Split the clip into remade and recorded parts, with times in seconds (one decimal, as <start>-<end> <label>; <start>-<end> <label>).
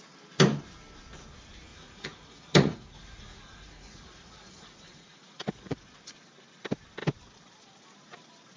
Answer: 0.0-1.7 recorded; 1.7-5.8 remade; 5.8-8.6 recorded